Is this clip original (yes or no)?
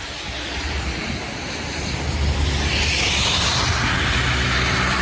yes